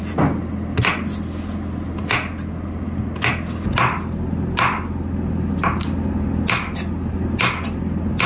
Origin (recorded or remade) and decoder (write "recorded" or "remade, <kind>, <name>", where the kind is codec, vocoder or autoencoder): recorded